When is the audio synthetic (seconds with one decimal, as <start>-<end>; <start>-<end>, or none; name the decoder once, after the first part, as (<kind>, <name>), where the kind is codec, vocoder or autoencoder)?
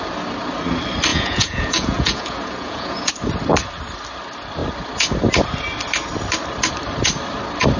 1.1-3.1 (vocoder, Vocos)